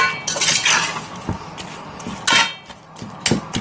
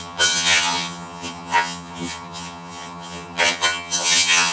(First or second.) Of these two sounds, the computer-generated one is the second